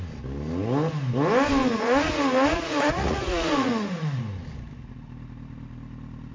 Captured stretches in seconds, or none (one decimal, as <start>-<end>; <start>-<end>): 0.0-1.6; 4.2-6.3